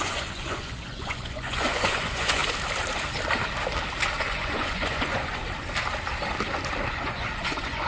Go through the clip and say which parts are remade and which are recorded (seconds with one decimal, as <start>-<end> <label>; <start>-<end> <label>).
0.0-2.4 remade; 2.4-4.2 recorded; 4.2-5.4 remade; 5.4-6.9 recorded; 6.9-7.9 remade